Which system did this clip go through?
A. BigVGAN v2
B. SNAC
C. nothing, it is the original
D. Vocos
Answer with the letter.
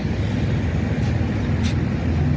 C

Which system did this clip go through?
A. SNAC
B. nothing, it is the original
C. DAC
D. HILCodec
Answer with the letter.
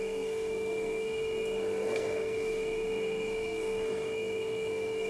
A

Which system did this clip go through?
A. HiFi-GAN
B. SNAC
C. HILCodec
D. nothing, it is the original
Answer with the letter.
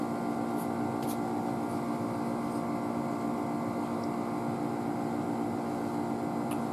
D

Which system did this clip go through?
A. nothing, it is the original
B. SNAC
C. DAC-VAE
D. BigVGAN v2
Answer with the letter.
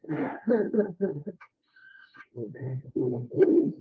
B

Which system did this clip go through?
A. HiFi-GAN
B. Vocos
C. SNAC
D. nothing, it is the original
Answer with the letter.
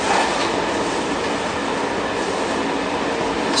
D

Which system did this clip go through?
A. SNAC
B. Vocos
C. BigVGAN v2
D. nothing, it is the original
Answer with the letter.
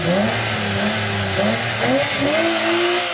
D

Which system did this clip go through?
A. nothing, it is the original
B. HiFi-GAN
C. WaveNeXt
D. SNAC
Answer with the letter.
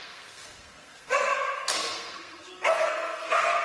D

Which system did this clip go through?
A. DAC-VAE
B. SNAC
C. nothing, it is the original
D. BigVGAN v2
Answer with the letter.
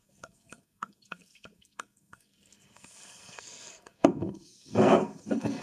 B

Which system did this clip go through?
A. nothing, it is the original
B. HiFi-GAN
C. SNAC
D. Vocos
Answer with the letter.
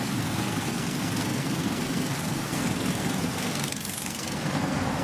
C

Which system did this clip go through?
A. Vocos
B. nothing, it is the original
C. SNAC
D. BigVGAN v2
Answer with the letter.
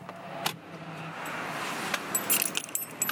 B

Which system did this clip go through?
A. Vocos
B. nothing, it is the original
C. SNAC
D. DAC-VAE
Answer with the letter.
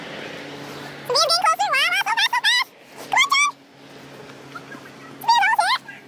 B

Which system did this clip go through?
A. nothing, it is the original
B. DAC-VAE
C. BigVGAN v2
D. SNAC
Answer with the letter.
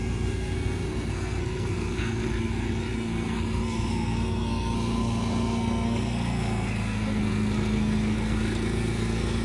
D